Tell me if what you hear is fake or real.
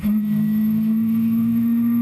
fake